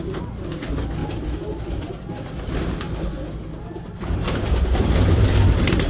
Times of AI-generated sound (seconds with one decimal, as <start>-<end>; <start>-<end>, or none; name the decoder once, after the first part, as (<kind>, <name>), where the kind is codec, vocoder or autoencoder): 4.2-5.9 (vocoder, BigVGAN v2)